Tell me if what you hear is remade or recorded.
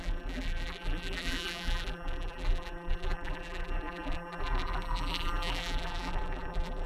remade